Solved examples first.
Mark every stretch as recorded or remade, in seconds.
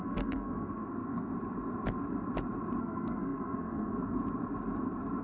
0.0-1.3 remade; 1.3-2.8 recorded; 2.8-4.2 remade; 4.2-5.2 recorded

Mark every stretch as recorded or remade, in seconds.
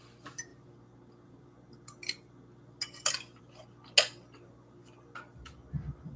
0.0-6.2 recorded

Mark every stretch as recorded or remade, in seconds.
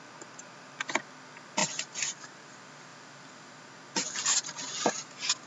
0.0-1.6 recorded; 1.6-2.5 remade; 2.5-2.9 recorded; 2.9-3.5 remade; 3.5-5.5 recorded